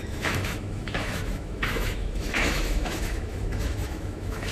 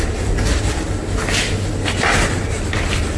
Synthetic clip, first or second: first